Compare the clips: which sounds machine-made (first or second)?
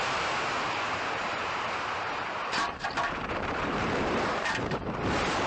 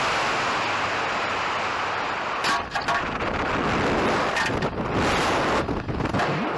first